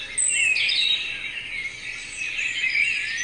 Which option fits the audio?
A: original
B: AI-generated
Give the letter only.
A